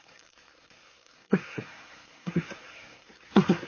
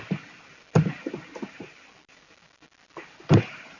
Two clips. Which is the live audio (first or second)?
second